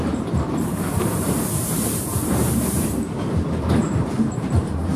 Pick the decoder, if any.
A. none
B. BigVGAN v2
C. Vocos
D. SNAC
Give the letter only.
B